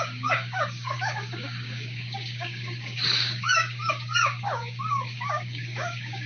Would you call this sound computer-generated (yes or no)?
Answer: yes